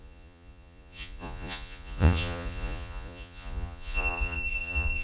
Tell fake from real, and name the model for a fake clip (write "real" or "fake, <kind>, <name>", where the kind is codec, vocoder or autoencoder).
fake, vocoder, Vocos